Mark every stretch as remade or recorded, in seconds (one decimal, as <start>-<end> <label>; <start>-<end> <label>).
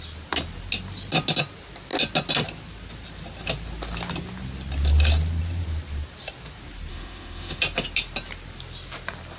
0.0-6.9 recorded; 6.9-7.6 remade; 7.6-9.4 recorded